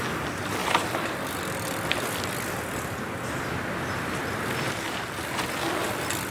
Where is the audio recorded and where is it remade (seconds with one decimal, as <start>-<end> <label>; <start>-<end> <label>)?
0.0-0.6 recorded; 0.6-4.4 remade; 4.4-6.3 recorded